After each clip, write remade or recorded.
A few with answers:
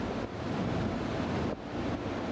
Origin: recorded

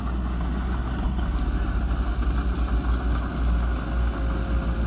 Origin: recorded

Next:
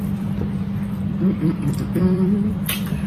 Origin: remade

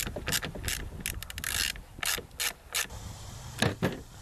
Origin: recorded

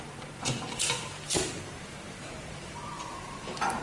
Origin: remade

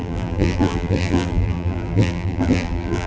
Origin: remade